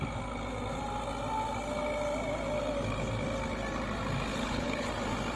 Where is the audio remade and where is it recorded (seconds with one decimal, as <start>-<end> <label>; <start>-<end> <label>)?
0.0-4.3 recorded; 4.3-4.9 remade; 4.9-5.4 recorded